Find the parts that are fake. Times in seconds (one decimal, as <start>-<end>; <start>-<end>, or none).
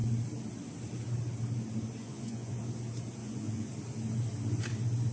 2.0-2.6; 3.2-3.7